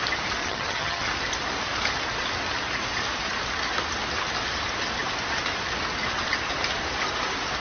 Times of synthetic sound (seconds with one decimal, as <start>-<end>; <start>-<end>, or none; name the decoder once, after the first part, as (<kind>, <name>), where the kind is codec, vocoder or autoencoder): 0.4-1.1 (vocoder, HiFi-GAN)

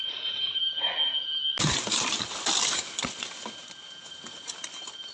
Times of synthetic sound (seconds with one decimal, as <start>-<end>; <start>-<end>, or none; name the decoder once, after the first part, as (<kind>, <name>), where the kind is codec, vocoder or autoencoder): none

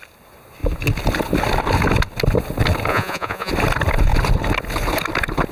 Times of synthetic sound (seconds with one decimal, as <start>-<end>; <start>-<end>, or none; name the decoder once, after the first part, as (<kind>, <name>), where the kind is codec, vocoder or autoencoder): 2.9-3.5 (vocoder, Vocos)

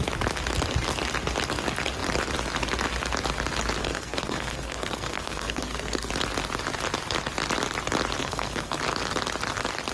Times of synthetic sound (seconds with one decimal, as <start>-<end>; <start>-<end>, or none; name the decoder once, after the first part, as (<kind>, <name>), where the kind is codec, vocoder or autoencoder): 3.8-6.1 (codec, SNAC); 8.2-8.8

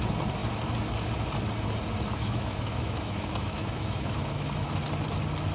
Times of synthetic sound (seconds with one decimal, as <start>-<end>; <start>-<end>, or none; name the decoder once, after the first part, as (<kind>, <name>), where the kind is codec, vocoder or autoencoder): 2.1-4.8 (autoencoder, DAC-VAE)

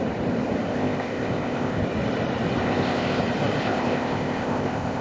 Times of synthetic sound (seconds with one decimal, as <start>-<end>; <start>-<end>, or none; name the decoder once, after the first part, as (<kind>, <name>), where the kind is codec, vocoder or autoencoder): 0.7-1.8 (codec, ZipCodec); 2.6-3.2; 3.6-5.0